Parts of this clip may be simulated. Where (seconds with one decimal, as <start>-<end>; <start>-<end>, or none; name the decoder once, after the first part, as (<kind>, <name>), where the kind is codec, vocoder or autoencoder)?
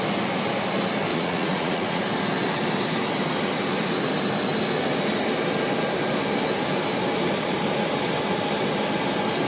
1.1-2.0 (vocoder, Vocos)